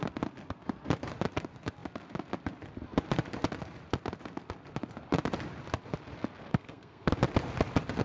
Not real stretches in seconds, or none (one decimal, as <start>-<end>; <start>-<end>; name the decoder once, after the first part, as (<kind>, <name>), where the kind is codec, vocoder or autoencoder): 6.5-7.1 (codec, SNAC)